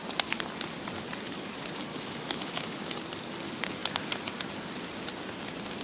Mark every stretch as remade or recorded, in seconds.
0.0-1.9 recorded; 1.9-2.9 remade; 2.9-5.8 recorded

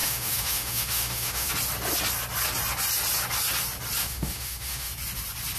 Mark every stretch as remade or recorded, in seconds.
0.0-1.5 remade; 1.5-4.0 recorded; 4.0-4.9 remade; 4.9-5.6 recorded

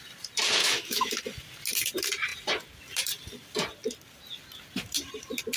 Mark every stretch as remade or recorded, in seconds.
0.0-0.6 recorded; 0.6-1.1 remade; 1.1-5.6 recorded

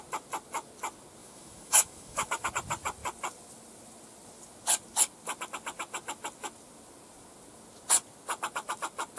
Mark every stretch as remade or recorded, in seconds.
0.0-1.2 recorded; 1.2-2.5 remade; 2.5-9.2 recorded

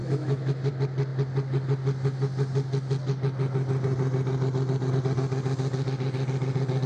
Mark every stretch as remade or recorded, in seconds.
0.0-0.7 remade; 0.7-6.9 recorded